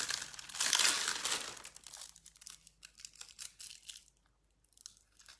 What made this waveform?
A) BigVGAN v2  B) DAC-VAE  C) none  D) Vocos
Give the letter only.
C